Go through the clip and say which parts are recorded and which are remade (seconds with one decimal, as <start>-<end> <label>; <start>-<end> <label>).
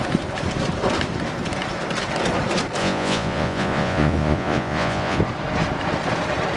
0.0-2.8 recorded; 2.8-5.2 remade; 5.2-6.6 recorded